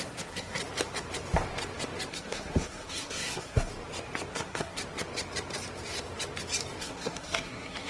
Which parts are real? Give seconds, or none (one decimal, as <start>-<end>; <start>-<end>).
0.6-2.1; 3.7-4.3; 4.8-6.8